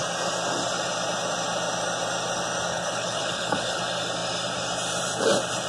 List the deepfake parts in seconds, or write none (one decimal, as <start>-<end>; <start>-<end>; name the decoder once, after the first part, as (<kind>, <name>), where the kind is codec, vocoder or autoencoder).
2.7-3.8 (codec, HILCodec)